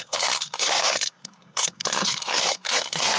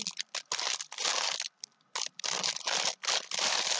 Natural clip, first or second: second